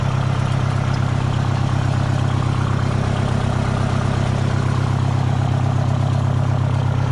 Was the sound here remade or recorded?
recorded